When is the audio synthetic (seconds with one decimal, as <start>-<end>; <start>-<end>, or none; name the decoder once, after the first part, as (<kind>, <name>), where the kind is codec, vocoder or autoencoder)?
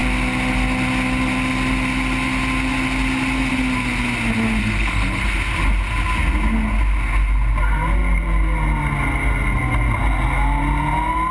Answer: 4.6-5.2 (codec, SNAC)